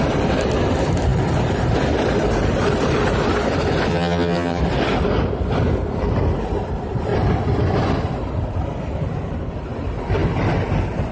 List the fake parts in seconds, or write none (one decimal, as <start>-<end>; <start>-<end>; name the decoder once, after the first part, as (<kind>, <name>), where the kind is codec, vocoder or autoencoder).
3.9-4.6 (vocoder, HiFi-GAN)